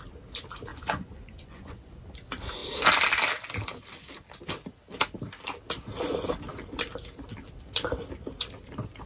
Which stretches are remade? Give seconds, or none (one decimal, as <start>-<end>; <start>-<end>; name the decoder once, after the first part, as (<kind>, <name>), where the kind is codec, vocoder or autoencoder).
0.7-2.0 (vocoder, Vocos)